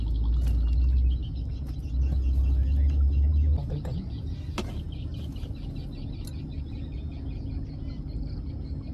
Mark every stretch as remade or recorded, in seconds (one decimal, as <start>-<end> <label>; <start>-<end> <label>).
0.0-8.9 recorded